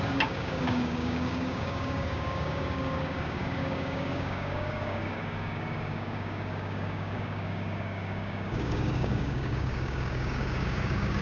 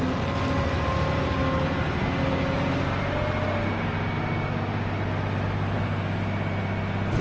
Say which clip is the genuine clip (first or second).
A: second